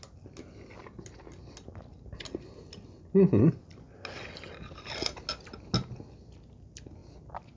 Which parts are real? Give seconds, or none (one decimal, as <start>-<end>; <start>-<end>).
0.0-7.6